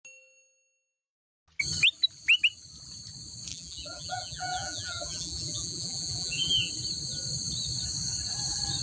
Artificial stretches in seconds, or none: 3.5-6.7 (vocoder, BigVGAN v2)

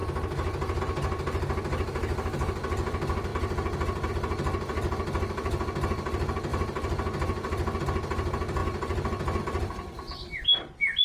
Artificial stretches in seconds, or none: 3.3-4.1 (vocoder, BigVGAN v2)

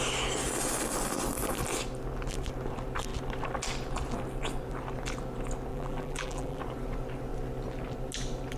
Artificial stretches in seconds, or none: 5.7-6.6 (vocoder, BigVGAN v2)

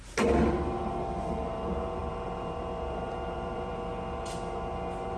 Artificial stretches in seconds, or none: 2.0-3.9 (vocoder, BigVGAN v2)

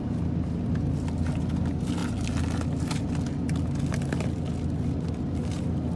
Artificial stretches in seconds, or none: none

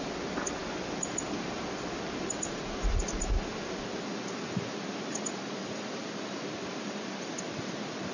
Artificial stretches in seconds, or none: none